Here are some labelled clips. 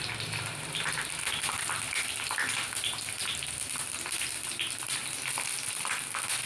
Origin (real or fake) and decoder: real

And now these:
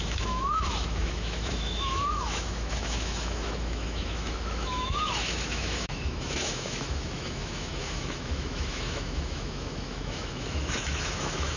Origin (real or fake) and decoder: fake, autoencoder, DAC-VAE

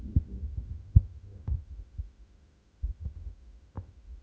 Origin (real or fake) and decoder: fake, autoencoder, DAC-VAE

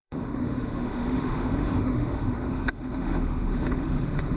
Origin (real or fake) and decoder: fake, autoencoder, DAC-VAE